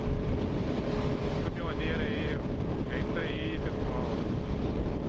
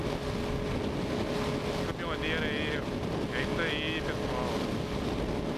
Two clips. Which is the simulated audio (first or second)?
first